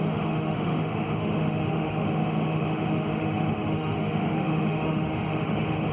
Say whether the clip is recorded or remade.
remade